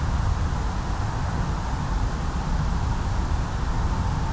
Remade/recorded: recorded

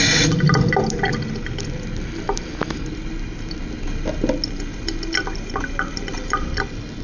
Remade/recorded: recorded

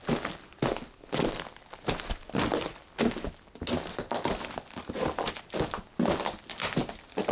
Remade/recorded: recorded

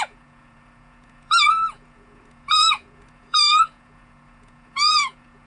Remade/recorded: remade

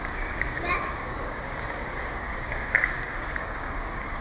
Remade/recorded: remade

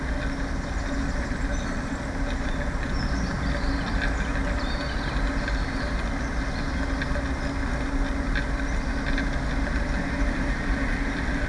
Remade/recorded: recorded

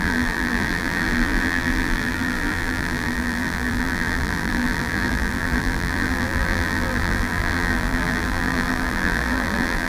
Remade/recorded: remade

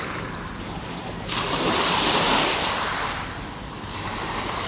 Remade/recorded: recorded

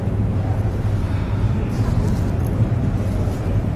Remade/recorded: remade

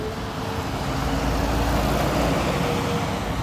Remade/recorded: recorded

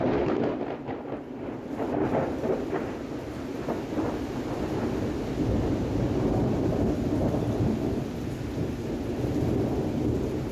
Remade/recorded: recorded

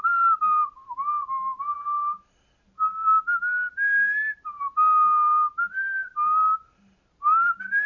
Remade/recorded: recorded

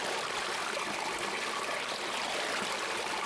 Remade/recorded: recorded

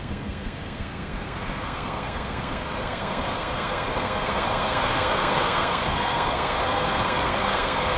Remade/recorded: remade